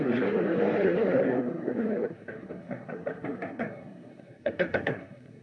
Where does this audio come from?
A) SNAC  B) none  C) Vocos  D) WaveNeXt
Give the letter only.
A